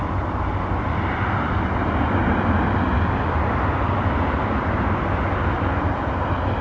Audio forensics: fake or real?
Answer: real